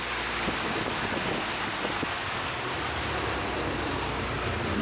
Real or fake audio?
real